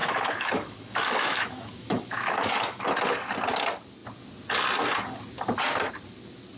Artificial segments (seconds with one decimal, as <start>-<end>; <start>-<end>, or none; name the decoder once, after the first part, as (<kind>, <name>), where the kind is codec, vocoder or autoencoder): 0.0-3.0 (autoencoder, DAC-VAE)